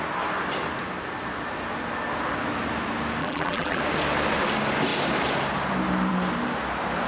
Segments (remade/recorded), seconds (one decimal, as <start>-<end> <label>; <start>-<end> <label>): 0.0-3.2 recorded; 3.2-3.8 remade; 3.8-7.1 recorded